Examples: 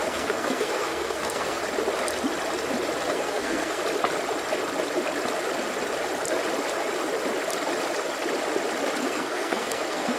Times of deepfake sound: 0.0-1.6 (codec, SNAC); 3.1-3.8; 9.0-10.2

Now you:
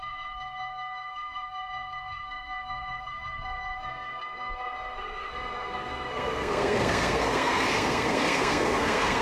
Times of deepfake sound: 0.0-9.2 (codec, SNAC)

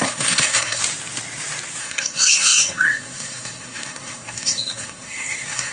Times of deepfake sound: 0.0-0.8 (codec, SNAC); 1.8-5.7

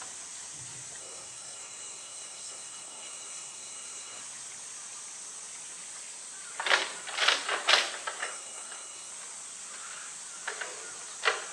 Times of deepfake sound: 1.0-4.2 (codec, SNAC); 8.2-9.1

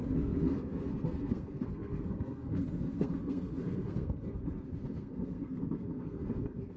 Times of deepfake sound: 0.0-6.8 (codec, SNAC)

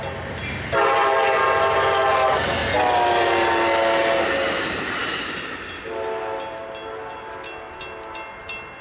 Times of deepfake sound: none

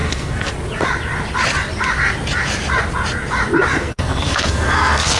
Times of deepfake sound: 0.0-0.5 (codec, SNAC); 3.8-5.2

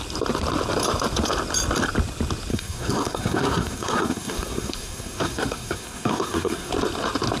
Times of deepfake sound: 2.5-6.7 (codec, SNAC)